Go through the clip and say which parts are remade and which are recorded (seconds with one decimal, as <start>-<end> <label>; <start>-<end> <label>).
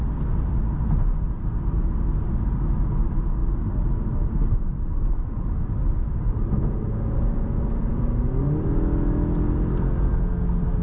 0.0-10.8 recorded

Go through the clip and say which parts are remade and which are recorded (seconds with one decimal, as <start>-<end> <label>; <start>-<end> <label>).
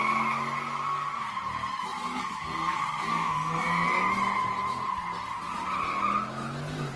0.0-2.0 recorded; 2.0-4.0 remade; 4.0-7.0 recorded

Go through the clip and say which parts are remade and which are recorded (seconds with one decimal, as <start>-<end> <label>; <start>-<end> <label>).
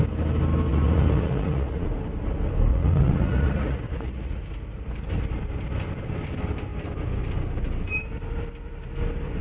0.0-0.7 recorded; 0.7-1.9 remade; 1.9-2.7 recorded; 2.7-4.4 remade; 4.4-9.4 recorded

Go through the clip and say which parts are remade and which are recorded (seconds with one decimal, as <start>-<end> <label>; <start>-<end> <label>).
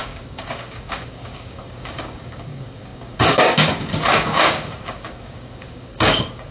0.0-6.5 remade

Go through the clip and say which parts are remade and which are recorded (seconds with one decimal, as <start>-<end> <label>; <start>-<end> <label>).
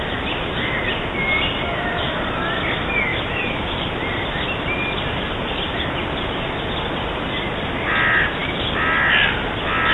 0.0-9.9 recorded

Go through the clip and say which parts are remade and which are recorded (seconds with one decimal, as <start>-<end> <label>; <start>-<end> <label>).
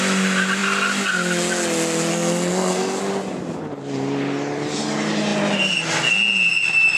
0.0-2.1 recorded; 2.1-3.0 remade; 3.0-7.0 recorded